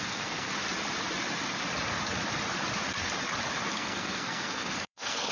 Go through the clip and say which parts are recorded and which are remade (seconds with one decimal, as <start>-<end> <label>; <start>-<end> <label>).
0.0-0.5 remade; 0.5-3.7 recorded; 3.7-5.3 remade